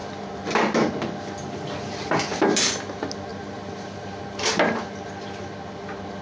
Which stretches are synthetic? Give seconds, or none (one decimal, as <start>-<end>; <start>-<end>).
3.3-4.1